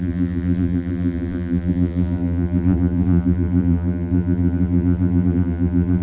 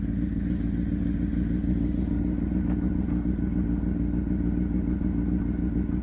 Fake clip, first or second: first